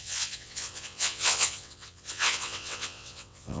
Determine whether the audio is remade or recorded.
remade